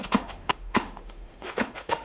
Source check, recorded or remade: remade